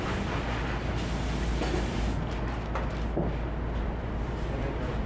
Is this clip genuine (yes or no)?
yes